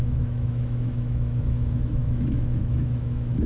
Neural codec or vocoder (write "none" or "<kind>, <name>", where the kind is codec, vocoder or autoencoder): autoencoder, DAC-VAE